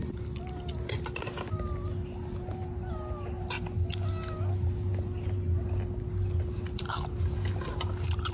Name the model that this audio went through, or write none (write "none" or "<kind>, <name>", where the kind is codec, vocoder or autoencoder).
none